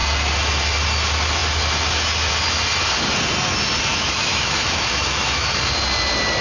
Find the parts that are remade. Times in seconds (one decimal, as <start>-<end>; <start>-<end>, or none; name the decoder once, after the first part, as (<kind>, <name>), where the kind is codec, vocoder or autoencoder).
3.9-5.5 (autoencoder, DAC-VAE)